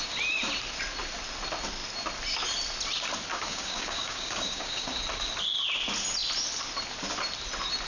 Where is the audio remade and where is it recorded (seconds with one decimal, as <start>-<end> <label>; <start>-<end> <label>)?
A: 0.0-3.3 recorded; 3.3-4.9 remade; 4.9-7.9 recorded